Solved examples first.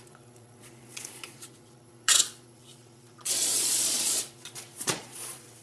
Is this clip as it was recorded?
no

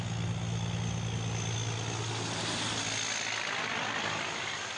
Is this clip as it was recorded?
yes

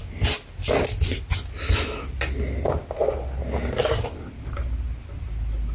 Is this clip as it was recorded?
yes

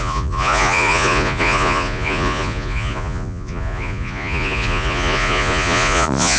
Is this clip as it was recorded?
no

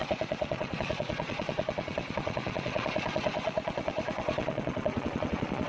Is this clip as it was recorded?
no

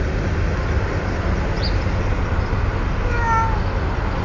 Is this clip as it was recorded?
yes